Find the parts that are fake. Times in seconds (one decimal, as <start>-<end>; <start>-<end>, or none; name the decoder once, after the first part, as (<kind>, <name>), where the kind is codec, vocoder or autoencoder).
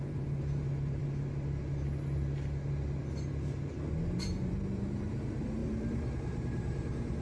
0.0-1.0 (vocoder, BigVGAN v2); 4.2-7.2